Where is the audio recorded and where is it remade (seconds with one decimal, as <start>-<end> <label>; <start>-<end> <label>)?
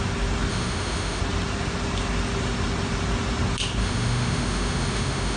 0.0-0.5 recorded; 0.5-1.2 remade; 1.2-3.8 recorded; 3.8-5.4 remade